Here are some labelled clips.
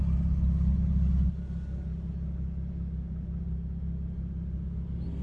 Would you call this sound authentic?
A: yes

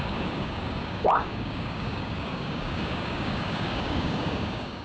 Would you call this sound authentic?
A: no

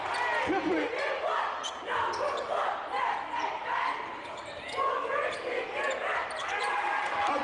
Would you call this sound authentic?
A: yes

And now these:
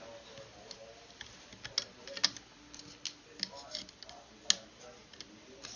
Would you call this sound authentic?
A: yes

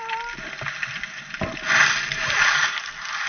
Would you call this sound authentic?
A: yes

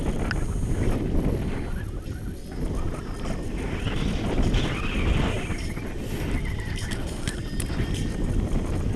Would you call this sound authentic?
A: yes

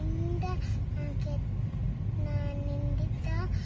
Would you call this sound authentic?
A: yes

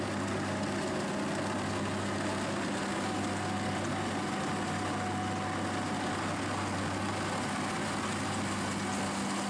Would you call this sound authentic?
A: yes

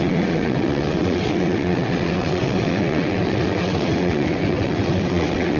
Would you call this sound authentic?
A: no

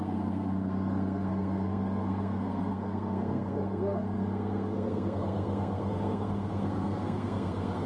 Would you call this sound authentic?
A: no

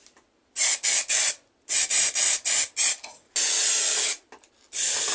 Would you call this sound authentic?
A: yes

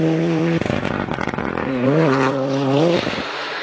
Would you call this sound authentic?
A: no